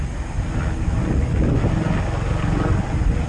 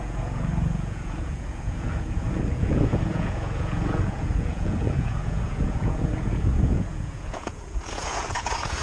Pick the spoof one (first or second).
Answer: second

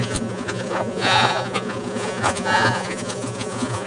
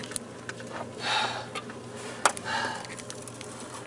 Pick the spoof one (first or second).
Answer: first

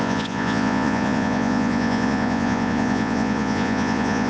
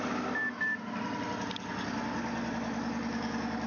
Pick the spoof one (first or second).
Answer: first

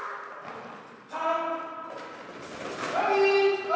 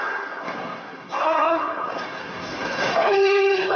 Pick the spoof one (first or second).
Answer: second